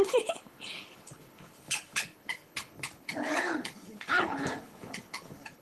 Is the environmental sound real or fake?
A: fake